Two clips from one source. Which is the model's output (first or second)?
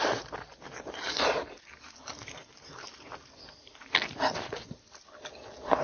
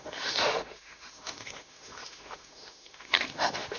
second